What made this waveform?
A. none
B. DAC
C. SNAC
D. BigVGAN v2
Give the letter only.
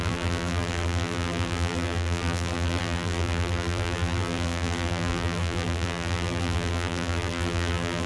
D